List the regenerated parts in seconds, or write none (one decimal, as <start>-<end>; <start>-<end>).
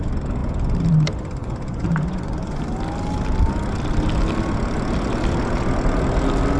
1.4-2.6